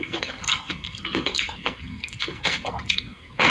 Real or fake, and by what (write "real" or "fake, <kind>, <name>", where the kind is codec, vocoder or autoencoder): fake, codec, SNAC